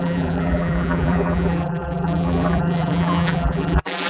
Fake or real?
fake